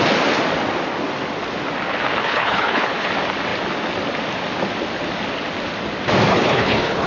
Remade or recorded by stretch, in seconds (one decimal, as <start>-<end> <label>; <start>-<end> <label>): 0.0-2.2 recorded; 2.2-3.1 remade; 3.1-6.3 recorded; 6.3-7.1 remade